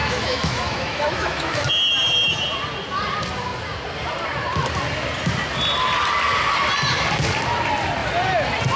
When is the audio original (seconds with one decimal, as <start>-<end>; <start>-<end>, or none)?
1.7-8.8